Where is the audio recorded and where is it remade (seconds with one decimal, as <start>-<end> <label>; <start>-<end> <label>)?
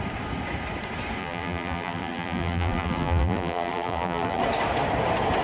0.0-1.2 recorded; 1.2-4.4 remade; 4.4-5.4 recorded